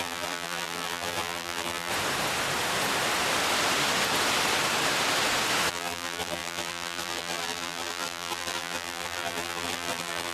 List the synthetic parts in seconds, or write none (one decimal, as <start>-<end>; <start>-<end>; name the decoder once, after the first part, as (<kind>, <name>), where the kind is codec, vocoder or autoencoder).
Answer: 0.0-1.9 (vocoder, BigVGAN v2); 5.7-10.3